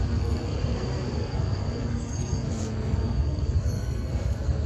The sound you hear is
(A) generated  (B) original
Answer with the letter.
A